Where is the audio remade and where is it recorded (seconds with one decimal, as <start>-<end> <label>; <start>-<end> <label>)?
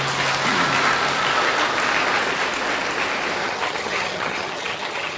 0.0-3.4 recorded; 3.4-5.2 remade